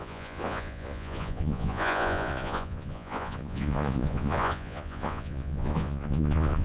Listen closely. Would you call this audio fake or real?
fake